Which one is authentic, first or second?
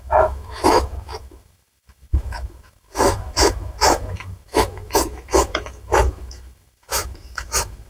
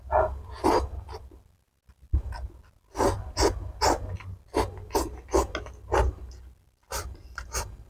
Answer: second